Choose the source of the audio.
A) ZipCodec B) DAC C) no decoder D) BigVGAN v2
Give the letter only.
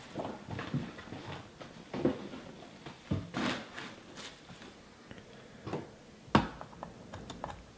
C